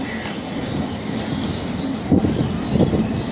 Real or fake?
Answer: real